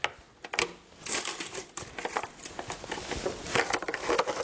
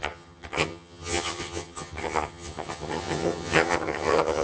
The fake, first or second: second